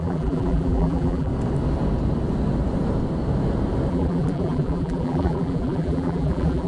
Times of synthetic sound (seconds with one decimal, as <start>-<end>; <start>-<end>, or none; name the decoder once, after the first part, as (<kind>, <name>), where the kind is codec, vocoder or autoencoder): 0.0-1.3 (vocoder, BigVGAN v2); 3.9-6.7